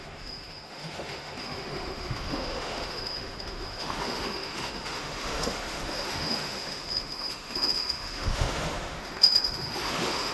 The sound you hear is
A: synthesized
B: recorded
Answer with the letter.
A